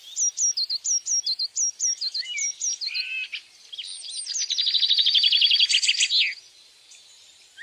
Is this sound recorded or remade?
recorded